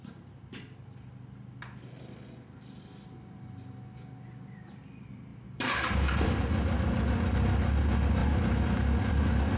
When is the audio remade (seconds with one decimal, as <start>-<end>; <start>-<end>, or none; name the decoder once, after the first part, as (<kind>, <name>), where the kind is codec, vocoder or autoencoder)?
5.3-6.4 (vocoder, BigVGAN v2)